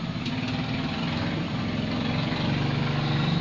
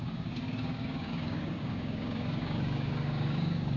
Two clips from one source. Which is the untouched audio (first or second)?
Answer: first